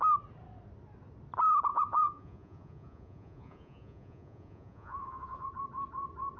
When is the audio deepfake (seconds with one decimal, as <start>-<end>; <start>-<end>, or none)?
1.7-5.5